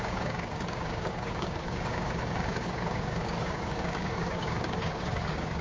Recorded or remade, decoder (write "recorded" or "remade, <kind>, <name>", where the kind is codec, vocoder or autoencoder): remade, codec, DAC